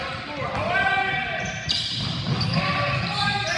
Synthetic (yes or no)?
no